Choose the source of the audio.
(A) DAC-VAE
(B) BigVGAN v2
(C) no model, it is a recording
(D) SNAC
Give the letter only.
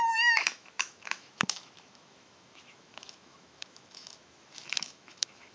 A